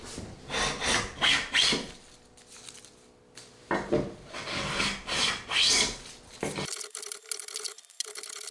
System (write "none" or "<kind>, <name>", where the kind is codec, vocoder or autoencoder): none